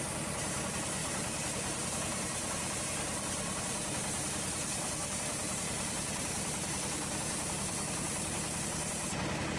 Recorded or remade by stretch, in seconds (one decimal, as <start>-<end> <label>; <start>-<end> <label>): 0.0-9.6 remade